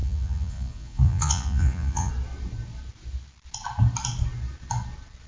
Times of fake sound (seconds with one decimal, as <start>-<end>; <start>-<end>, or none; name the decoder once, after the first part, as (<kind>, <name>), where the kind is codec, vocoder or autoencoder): 0.0-2.1 (vocoder, Vocos)